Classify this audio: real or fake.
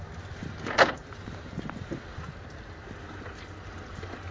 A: real